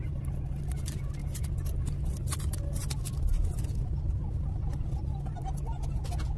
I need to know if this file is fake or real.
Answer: real